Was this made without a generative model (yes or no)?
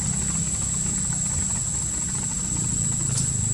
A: yes